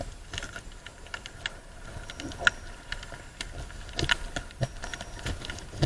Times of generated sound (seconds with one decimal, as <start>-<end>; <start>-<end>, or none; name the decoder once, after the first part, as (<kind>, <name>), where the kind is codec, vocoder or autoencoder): none

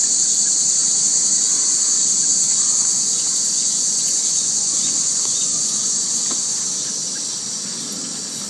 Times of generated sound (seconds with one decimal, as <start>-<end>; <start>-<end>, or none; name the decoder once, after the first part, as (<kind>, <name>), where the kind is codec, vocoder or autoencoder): 2.3-6.2 (vocoder, Vocos)